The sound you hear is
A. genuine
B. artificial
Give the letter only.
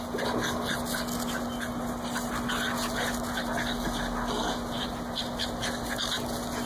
A